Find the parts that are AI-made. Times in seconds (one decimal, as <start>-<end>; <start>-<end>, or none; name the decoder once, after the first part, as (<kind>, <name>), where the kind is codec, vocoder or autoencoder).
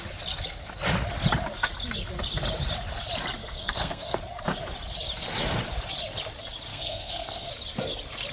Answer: 3.4-4.2 (codec, SNAC); 6.7-7.5